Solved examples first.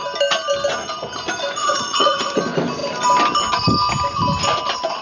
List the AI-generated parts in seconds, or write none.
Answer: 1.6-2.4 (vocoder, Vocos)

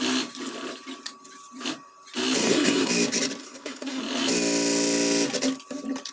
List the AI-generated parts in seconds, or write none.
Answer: 2.4-2.9 (codec, SNAC); 3.4-4.0

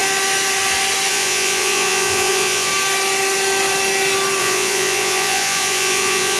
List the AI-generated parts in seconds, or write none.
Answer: 1.1-2.7 (vocoder, Vocos); 4.4-6.4